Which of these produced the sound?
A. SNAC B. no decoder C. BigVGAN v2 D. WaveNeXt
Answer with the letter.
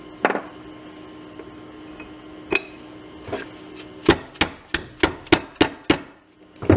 B